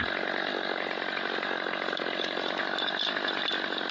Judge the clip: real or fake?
real